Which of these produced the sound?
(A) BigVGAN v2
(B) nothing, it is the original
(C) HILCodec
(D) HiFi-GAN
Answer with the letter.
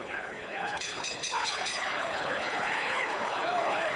C